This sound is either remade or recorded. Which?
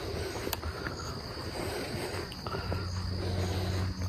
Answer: recorded